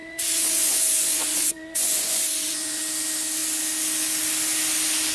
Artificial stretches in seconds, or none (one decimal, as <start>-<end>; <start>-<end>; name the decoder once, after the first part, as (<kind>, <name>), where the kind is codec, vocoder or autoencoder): 0.0-2.8 (vocoder, Vocos)